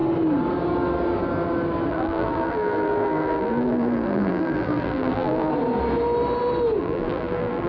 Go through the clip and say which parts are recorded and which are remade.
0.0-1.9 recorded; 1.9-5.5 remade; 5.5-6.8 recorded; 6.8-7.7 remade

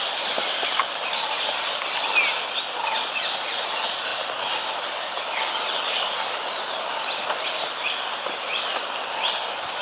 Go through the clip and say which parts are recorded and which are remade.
0.0-9.8 recorded

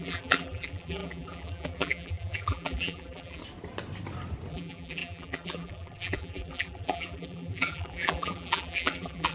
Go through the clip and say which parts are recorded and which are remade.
0.0-3.4 remade; 3.4-4.5 recorded; 4.5-9.3 remade

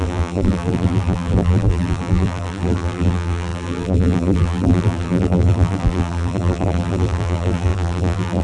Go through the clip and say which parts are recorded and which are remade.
0.0-8.4 remade

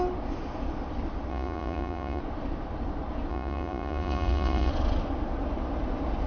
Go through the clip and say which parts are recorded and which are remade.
0.0-1.3 recorded; 1.3-2.2 remade; 2.2-3.3 recorded; 3.3-4.7 remade; 4.7-6.3 recorded

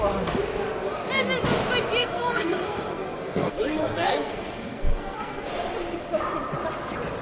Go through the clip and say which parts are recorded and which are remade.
0.0-2.0 recorded; 2.0-5.5 remade; 5.5-7.2 recorded